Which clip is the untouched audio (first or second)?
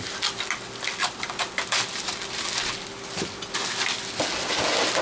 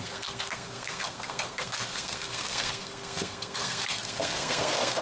first